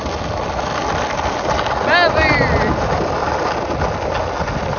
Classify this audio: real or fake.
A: real